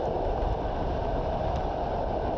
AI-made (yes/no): yes